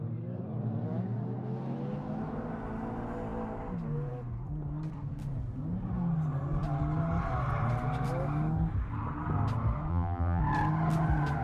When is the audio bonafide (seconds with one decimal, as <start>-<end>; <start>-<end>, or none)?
0.0-9.9; 10.4-11.4